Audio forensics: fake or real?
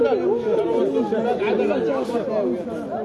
real